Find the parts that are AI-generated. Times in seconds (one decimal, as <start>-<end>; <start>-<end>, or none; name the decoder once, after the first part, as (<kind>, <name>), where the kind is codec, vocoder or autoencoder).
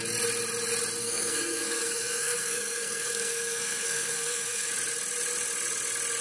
1.0-4.7 (codec, SNAC)